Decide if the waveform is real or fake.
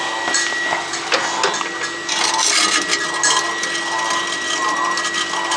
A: real